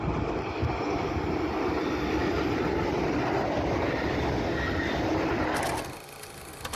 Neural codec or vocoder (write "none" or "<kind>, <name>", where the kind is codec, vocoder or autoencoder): none